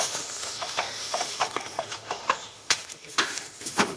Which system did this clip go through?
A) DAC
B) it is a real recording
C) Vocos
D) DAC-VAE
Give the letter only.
D